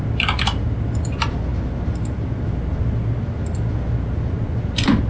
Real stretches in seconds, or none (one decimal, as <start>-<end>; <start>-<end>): 0.0-5.1